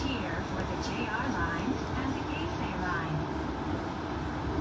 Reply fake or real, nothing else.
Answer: real